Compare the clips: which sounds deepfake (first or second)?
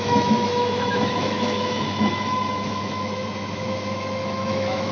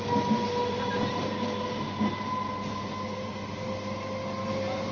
first